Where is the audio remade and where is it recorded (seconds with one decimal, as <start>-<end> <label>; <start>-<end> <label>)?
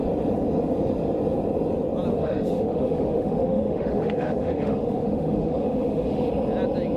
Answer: 0.0-2.1 recorded; 2.1-6.3 remade; 6.3-7.0 recorded